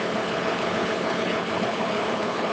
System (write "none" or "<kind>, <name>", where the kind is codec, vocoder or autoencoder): codec, HILCodec